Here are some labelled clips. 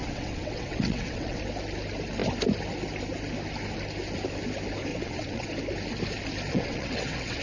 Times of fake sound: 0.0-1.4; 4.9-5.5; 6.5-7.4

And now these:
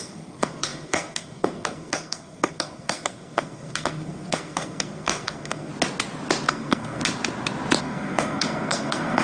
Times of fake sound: 0.0-5.7; 6.5-7.0; 7.8-9.2